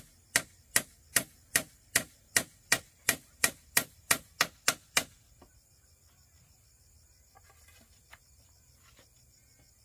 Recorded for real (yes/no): yes